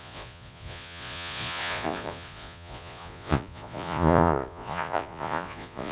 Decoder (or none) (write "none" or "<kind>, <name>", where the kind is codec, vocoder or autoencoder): vocoder, Vocos